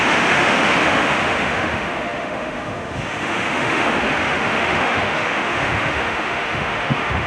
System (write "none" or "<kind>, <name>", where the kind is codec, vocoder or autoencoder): autoencoder, DAC-VAE